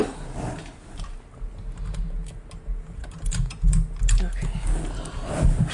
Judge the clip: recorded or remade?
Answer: recorded